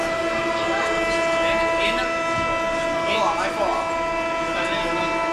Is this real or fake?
real